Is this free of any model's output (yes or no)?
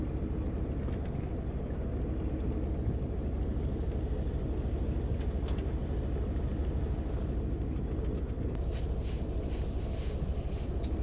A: yes